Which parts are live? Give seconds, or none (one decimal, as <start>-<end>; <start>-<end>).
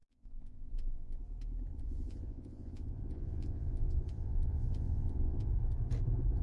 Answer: 1.2-1.7; 5.5-6.4